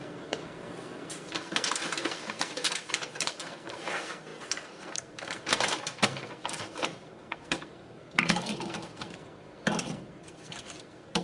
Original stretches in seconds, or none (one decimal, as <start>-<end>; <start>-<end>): none